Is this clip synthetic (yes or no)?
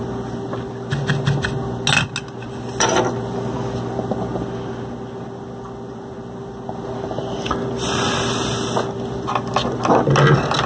no